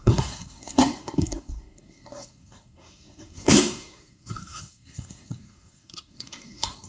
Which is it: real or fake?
fake